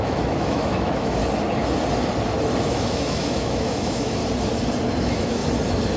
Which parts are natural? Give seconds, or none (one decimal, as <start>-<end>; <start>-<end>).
1.2-2.6; 4.2-5.0; 5.4-6.0